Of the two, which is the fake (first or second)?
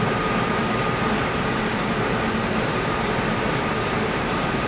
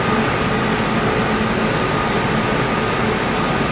first